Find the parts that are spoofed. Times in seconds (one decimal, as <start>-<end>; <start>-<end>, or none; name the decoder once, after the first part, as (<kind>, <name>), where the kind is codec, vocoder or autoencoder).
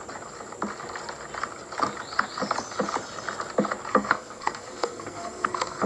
3.9-5.9 (codec, SNAC)